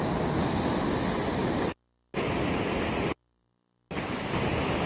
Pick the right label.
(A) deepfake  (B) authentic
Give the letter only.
B